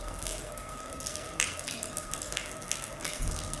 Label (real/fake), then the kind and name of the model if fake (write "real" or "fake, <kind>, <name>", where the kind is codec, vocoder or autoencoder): fake, codec, SNAC